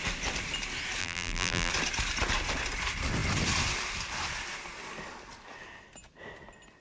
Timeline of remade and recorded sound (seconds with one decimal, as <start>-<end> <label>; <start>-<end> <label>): 0.0-1.0 recorded; 1.0-1.7 remade; 1.7-6.8 recorded